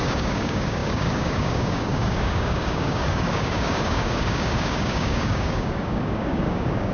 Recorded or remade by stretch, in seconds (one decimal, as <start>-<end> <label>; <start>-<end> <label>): 0.0-6.9 remade